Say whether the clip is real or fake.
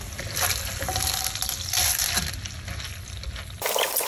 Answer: real